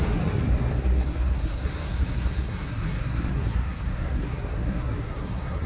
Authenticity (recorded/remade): remade